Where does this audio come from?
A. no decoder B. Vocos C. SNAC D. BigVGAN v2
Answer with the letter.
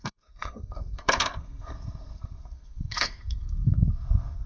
C